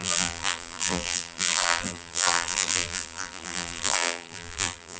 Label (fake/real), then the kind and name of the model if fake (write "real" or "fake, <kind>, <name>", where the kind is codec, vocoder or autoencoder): fake, vocoder, BigVGAN v2